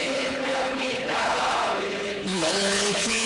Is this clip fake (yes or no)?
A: yes